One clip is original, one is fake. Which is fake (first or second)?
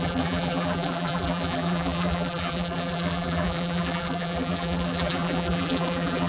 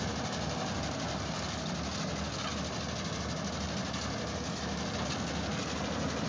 first